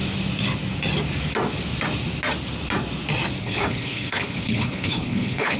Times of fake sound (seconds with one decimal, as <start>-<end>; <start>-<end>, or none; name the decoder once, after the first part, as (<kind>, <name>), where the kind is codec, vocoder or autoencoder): 3.4-5.6 (codec, HILCodec)